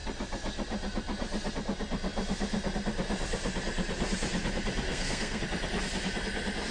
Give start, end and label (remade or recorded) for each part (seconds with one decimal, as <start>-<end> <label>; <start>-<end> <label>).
0.0-4.9 recorded; 4.9-5.4 remade; 5.4-6.7 recorded

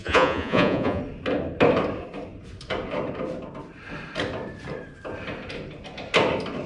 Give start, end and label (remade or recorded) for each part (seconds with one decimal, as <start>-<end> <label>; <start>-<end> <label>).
0.0-1.0 remade; 1.0-6.7 recorded